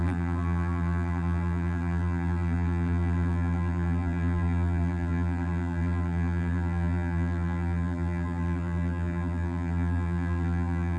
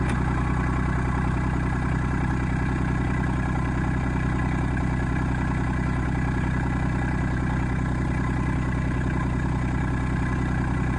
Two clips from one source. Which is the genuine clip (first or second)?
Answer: second